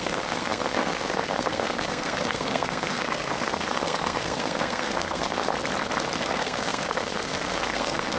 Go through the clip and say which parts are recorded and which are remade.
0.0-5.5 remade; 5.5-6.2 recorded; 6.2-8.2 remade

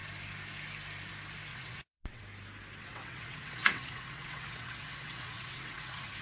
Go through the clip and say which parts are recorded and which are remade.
0.0-1.5 recorded; 1.5-2.2 remade; 2.2-2.8 recorded; 2.8-6.2 remade

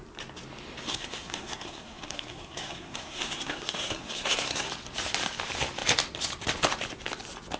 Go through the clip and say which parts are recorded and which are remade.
0.0-0.9 recorded; 0.9-4.7 remade; 4.7-7.6 recorded

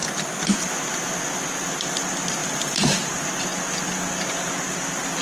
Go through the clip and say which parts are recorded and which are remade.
0.0-5.2 recorded